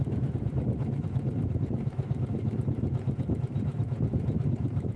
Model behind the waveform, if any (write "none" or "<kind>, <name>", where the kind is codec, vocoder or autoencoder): autoencoder, DAC-VAE